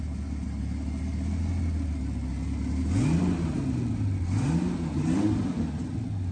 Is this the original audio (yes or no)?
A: yes